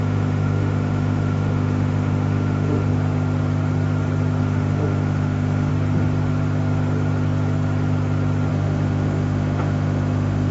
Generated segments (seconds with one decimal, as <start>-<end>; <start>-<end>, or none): 0.0-2.9; 4.4-5.7; 8.5-10.5